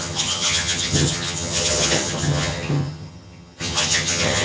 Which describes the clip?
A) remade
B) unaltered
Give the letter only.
A